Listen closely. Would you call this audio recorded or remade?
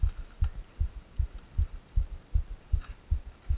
recorded